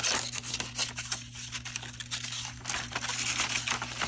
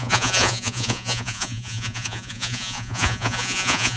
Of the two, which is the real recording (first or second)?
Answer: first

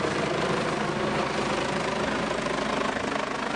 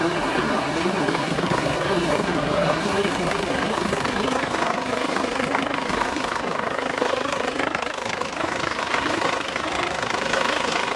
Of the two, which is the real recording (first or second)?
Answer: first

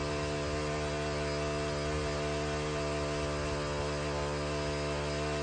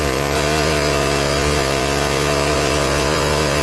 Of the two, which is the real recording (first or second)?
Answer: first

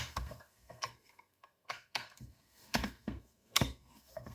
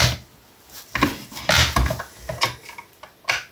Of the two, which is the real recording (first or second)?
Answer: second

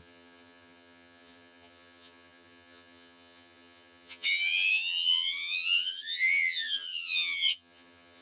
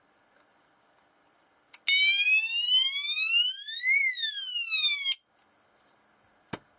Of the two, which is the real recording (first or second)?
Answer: second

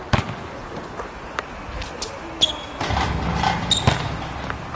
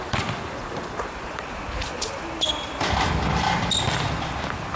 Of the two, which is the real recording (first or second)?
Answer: first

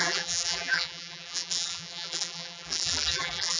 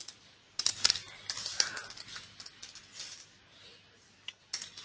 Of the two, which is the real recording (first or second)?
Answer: second